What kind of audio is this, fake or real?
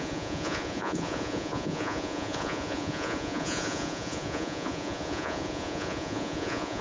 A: fake